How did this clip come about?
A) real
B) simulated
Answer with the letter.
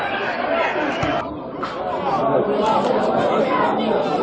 A